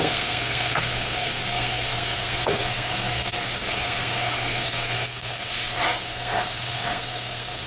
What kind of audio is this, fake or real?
fake